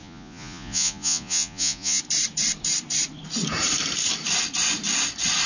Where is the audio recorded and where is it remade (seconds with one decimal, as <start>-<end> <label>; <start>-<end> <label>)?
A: 0.0-2.0 remade; 2.0-5.5 recorded